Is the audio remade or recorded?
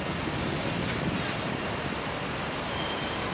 remade